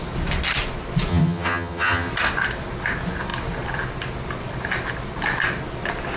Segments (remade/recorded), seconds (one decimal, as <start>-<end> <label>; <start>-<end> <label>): 0.0-1.1 recorded; 1.1-2.1 remade; 2.1-6.2 recorded